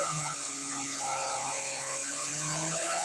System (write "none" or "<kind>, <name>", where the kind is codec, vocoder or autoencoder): codec, HILCodec